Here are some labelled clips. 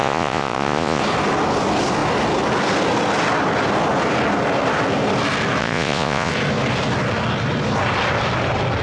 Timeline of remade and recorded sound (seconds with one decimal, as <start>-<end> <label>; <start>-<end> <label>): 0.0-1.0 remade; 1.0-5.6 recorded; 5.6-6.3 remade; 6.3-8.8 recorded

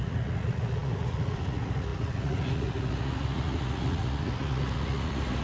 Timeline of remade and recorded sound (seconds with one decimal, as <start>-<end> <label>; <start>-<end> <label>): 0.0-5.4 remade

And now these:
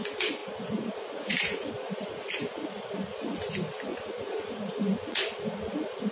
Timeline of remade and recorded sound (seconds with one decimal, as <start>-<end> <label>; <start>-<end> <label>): 0.0-0.4 recorded; 0.4-3.4 remade; 3.4-3.9 recorded; 3.9-6.1 remade

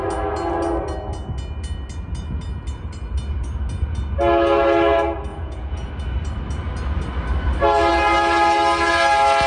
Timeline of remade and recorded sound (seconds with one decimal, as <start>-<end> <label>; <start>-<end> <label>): 0.0-5.3 recorded; 5.3-5.9 remade; 5.9-9.5 recorded

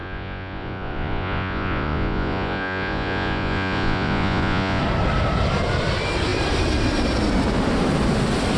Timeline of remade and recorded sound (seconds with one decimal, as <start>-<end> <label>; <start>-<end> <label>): 0.0-4.8 remade; 4.8-8.6 recorded

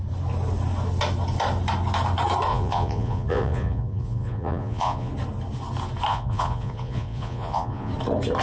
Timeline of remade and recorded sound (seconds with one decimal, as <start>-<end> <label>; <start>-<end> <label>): 0.0-2.5 recorded; 2.5-5.1 remade; 5.1-6.1 recorded; 6.1-7.9 remade; 7.9-8.4 recorded

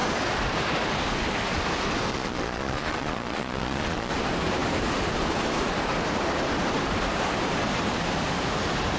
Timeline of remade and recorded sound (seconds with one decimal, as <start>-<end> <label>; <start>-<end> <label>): 0.0-2.1 recorded; 2.1-4.1 remade; 4.1-9.0 recorded

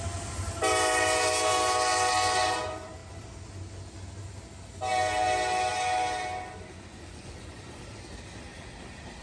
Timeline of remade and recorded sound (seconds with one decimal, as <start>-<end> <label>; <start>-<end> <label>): 0.0-6.9 recorded; 6.9-7.8 remade; 7.8-9.2 recorded